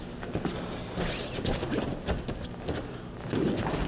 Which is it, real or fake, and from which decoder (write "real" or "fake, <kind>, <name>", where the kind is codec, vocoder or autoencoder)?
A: real